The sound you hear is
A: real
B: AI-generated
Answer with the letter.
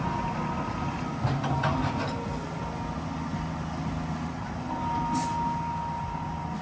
A